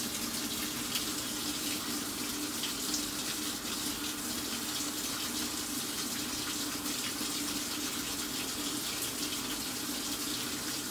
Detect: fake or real real